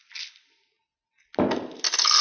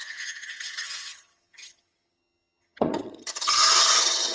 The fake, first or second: second